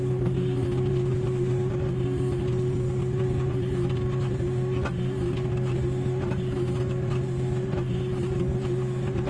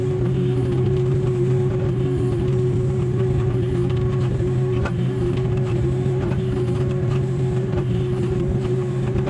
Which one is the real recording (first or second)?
first